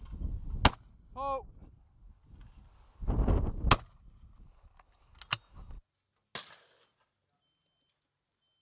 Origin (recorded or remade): recorded